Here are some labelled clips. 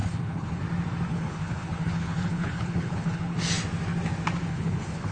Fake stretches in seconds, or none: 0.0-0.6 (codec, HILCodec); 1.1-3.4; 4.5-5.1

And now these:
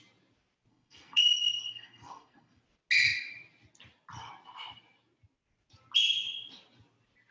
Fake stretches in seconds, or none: 0.7-2.6 (codec, SNAC)

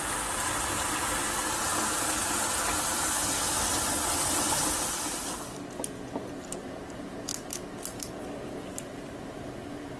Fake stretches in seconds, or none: none